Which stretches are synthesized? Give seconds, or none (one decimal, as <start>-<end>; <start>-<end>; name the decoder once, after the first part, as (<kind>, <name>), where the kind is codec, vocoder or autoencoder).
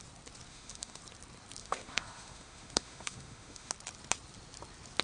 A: 0.5-1.0 (autoencoder, DAC-VAE); 1.6-3.7